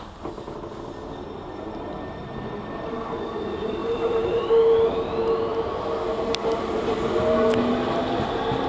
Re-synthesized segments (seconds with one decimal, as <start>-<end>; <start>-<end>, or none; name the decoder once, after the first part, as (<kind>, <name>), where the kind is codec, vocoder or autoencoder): 3.8-4.5 (vocoder, BigVGAN v2)